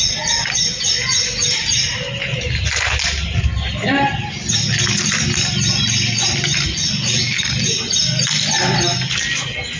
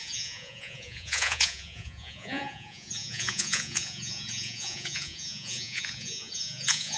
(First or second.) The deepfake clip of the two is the second